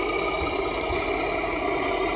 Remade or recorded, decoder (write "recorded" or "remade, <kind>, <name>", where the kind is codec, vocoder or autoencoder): recorded